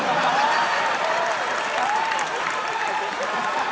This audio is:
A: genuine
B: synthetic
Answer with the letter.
B